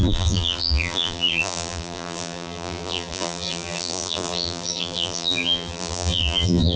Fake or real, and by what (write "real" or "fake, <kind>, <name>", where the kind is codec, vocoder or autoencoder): fake, vocoder, BigVGAN v2